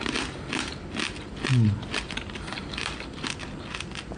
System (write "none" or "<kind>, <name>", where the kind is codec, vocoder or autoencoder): none